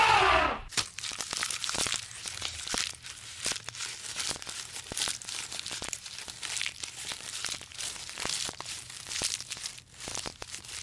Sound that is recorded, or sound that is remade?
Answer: remade